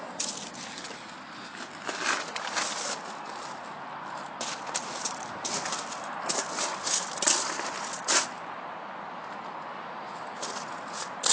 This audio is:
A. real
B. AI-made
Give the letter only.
A